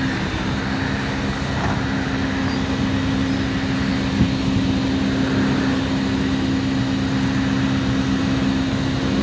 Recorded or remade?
recorded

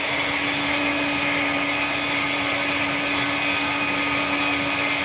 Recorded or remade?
recorded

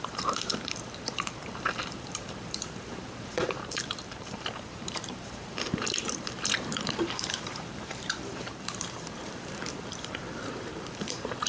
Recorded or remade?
remade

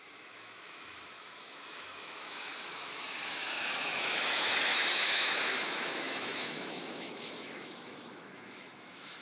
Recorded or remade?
remade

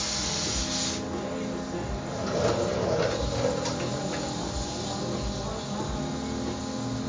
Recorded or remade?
recorded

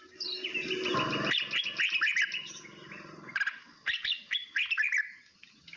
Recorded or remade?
recorded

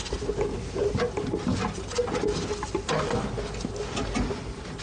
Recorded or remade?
recorded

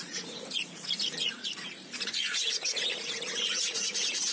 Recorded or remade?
remade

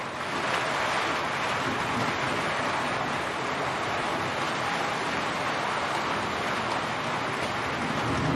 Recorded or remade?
recorded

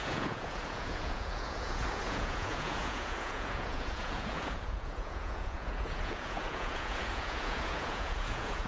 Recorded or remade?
remade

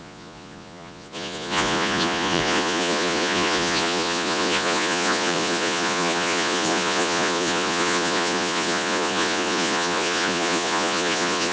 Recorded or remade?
remade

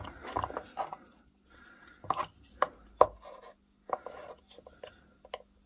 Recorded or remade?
recorded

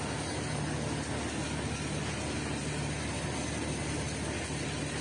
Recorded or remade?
recorded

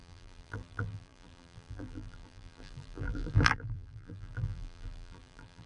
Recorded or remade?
remade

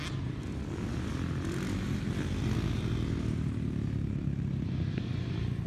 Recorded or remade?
recorded